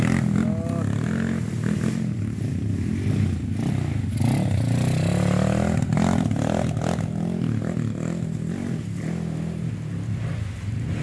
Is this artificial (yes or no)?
no